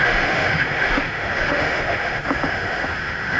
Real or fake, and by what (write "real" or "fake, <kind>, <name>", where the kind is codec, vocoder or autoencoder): fake, autoencoder, DAC-VAE